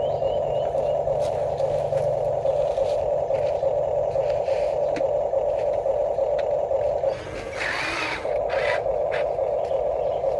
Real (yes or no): yes